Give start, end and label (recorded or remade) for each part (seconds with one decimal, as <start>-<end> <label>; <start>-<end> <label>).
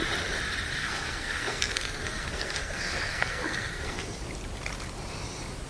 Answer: 0.0-0.8 recorded; 0.8-4.2 remade; 4.2-5.7 recorded